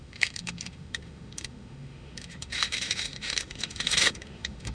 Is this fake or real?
fake